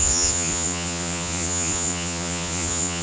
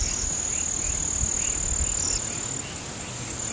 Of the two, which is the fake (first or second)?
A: first